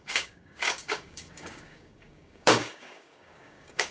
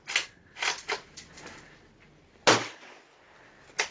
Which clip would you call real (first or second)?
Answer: second